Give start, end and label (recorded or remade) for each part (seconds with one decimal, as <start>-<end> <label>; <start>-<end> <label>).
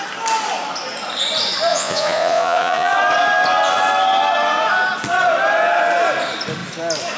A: 0.0-1.7 recorded; 1.7-2.9 remade; 2.9-7.2 recorded